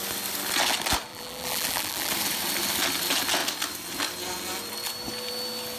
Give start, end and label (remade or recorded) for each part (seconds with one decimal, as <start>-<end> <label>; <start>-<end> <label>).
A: 0.0-1.1 recorded; 1.1-2.1 remade; 2.1-5.8 recorded

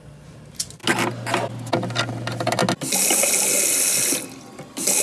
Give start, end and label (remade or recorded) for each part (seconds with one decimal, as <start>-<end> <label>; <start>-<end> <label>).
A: 0.0-5.0 recorded